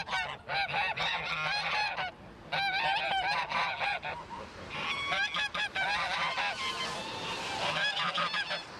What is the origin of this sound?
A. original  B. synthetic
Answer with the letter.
A